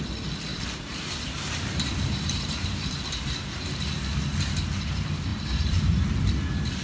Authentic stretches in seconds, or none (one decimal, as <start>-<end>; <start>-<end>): 0.0-0.5; 3.9-5.3; 6.0-6.8